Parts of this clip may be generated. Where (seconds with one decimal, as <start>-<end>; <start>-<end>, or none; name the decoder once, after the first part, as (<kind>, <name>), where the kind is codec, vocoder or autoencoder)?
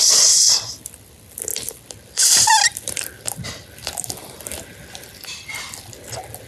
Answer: 1.5-3.5 (vocoder, BigVGAN v2)